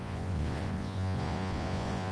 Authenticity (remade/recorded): remade